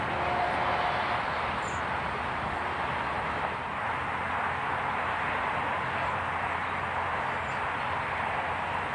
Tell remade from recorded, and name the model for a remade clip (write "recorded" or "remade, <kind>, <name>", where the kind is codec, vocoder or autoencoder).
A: recorded